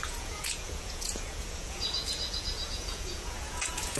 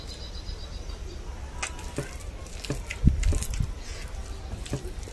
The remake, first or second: first